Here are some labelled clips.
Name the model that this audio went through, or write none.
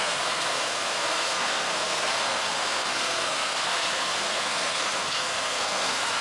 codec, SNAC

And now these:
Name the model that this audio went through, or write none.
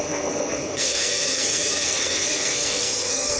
codec, SNAC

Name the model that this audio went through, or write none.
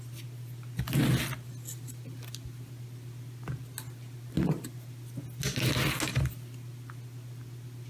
none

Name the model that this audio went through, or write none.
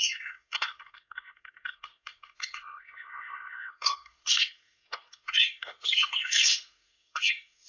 codec, SNAC